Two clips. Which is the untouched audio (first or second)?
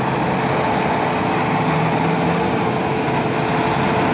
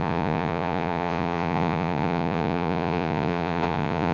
first